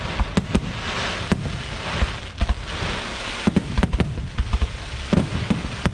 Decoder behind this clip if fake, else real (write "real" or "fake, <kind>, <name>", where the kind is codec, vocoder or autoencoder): real